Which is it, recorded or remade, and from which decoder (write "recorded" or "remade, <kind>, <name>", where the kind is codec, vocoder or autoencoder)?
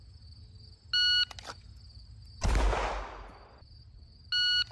recorded